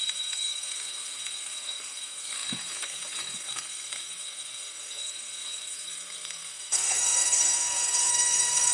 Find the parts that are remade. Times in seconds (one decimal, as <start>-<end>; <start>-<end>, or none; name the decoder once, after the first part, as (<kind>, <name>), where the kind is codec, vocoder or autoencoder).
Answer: 0.0-8.7 (codec, SNAC)